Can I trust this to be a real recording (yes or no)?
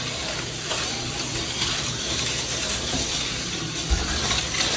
yes